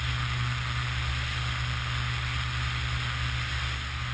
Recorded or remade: recorded